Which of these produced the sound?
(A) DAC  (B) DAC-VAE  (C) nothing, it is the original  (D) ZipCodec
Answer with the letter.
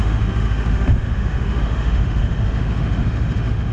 B